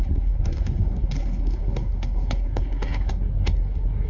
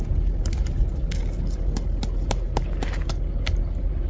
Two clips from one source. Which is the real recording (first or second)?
second